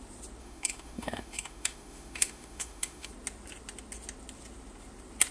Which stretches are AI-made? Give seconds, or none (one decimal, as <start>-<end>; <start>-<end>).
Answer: 0.4-3.1